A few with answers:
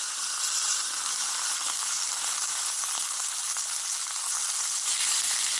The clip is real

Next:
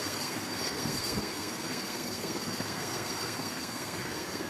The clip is fake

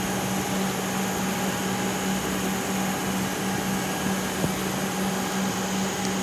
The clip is real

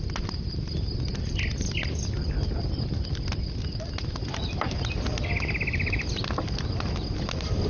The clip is real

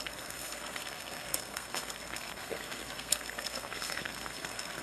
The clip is fake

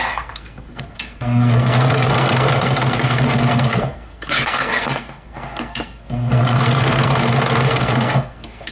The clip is fake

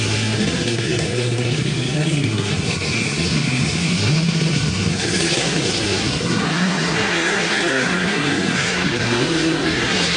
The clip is fake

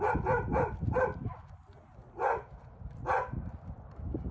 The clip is real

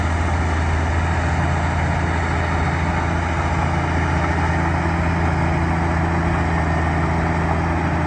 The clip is real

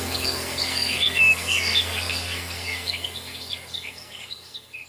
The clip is fake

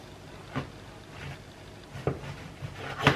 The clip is real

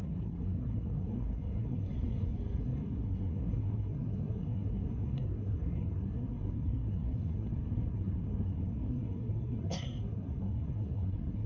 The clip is fake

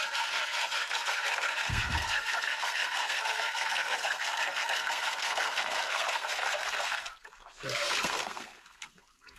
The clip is fake